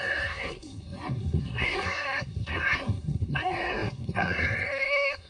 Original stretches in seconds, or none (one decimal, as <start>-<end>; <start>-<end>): none